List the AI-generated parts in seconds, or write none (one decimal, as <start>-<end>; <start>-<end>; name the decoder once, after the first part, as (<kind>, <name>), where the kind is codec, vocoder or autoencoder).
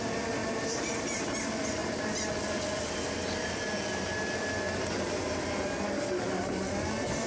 0.4-1.4 (vocoder, BigVGAN v2)